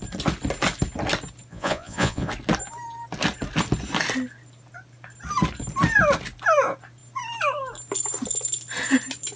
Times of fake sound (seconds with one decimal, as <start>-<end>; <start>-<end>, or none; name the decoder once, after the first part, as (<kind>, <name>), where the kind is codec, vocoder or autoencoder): 1.5-2.3 (vocoder, Vocos)